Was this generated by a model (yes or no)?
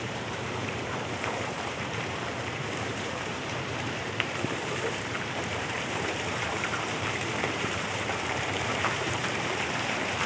yes